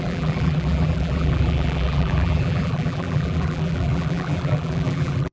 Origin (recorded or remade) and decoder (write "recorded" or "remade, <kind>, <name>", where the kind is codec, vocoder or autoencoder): remade, vocoder, BigVGAN v2